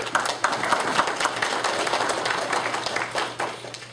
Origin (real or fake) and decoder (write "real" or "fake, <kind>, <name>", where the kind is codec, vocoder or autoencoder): real